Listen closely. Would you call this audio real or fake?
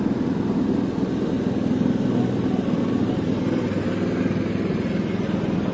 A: real